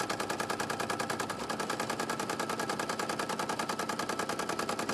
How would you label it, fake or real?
real